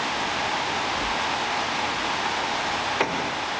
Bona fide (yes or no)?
yes